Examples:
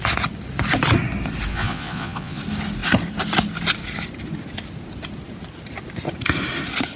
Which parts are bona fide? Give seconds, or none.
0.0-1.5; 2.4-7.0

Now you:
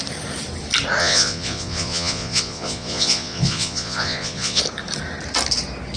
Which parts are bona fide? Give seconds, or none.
0.0-1.0; 4.6-6.0

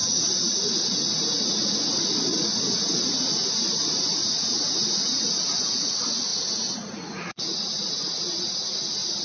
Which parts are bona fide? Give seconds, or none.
1.8-2.3; 5.8-6.3

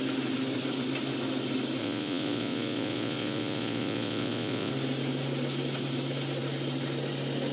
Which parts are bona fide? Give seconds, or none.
0.0-1.8; 4.7-7.5